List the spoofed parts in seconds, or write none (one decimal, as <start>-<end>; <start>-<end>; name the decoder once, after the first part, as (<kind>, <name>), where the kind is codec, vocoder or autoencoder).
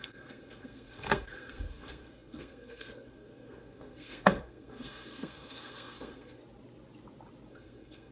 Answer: 0.0-6.4 (codec, SNAC); 7.5-8.1